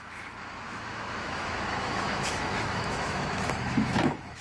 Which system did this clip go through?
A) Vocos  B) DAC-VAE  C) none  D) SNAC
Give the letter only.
B